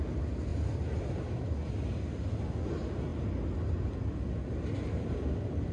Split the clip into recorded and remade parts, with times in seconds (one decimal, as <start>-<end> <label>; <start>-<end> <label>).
0.0-5.7 recorded